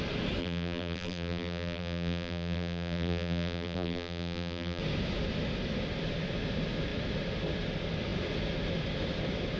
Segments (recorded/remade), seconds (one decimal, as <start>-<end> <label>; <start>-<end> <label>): 0.0-0.4 recorded; 0.4-4.8 remade; 4.8-9.6 recorded